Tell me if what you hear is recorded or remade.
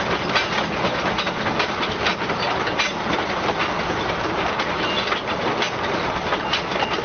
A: recorded